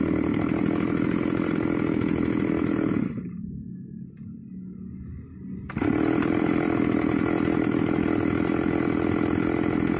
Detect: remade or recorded recorded